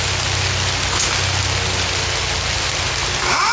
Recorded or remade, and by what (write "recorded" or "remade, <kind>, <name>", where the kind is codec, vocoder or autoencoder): recorded